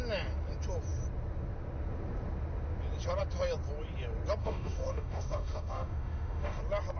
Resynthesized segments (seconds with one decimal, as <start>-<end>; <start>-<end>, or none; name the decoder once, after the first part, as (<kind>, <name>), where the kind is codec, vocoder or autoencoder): 4.4-6.6 (autoencoder, DAC-VAE)